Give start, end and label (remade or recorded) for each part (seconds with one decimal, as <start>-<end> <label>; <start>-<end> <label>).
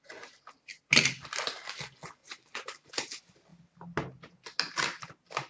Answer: 0.0-2.2 recorded; 2.2-2.9 remade; 2.9-5.5 recorded